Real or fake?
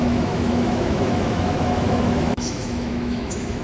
fake